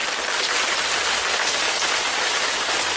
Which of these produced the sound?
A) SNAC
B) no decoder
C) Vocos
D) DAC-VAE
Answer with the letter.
B